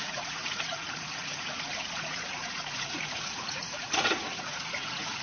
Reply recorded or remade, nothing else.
remade